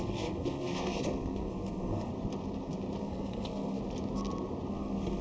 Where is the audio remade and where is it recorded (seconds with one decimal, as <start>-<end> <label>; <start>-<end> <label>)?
0.0-2.1 remade; 2.1-3.0 recorded; 3.0-3.8 remade; 3.8-4.7 recorded; 4.7-5.2 remade